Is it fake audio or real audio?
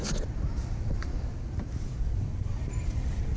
fake